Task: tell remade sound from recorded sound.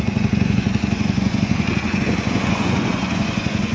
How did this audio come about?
remade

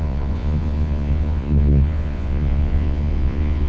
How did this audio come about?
remade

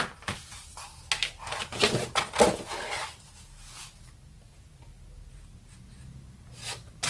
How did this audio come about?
recorded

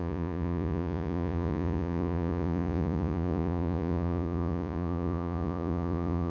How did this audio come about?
remade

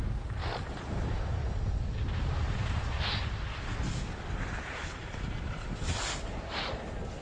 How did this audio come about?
recorded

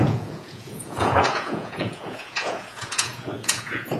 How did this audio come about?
remade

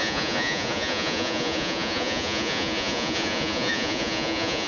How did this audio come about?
remade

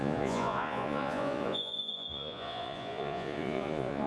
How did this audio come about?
remade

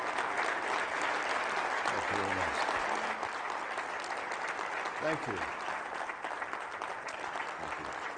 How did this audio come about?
recorded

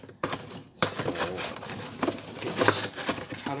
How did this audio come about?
recorded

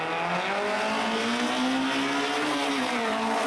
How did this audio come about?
recorded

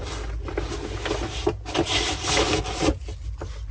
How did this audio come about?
recorded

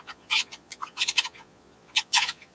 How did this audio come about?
remade